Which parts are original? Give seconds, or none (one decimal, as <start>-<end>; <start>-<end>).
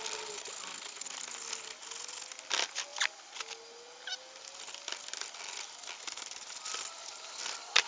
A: 0.0-7.9